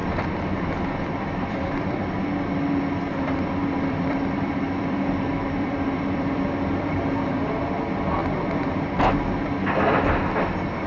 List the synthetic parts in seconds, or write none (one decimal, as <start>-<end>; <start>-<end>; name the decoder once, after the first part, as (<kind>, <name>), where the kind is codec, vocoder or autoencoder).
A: 0.0-2.1 (vocoder, BigVGAN v2); 3.6-7.6